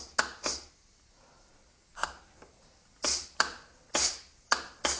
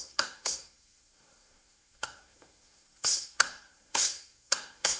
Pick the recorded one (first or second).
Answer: first